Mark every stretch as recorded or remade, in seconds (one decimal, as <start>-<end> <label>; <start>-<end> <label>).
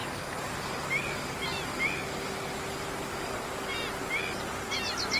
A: 0.0-5.2 recorded